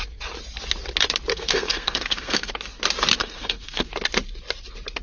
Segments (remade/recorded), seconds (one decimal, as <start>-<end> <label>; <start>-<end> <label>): 0.0-1.3 recorded; 1.3-2.5 remade; 2.5-3.2 recorded; 3.2-3.9 remade; 3.9-5.0 recorded